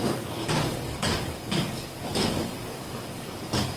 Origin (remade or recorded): remade